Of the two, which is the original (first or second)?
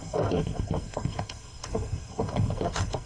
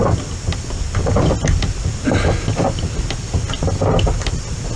second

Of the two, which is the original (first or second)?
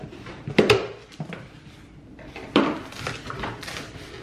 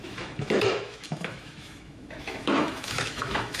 first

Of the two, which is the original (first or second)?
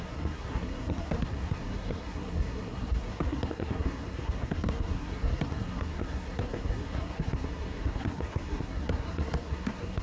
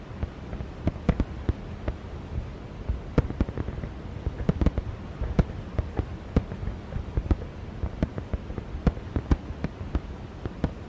second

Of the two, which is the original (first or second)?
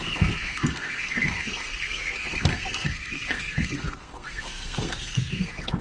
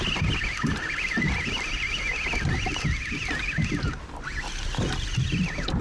second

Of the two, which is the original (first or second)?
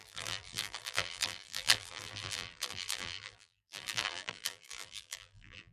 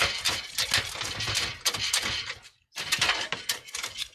second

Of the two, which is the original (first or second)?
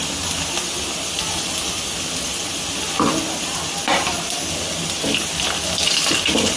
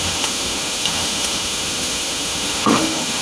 first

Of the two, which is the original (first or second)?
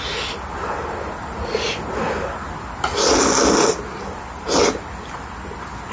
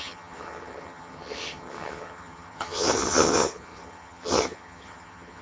first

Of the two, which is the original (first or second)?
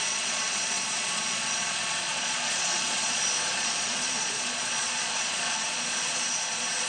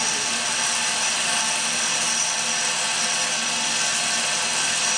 second